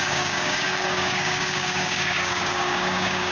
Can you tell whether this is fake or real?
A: fake